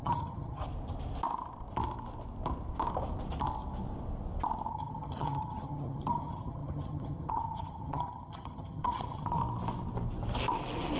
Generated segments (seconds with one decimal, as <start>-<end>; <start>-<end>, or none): 0.0-0.6; 4.7-9.4